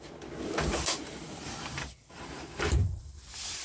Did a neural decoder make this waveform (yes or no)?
yes